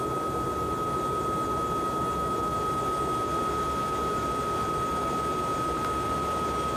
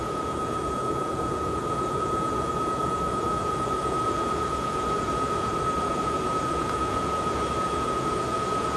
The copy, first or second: second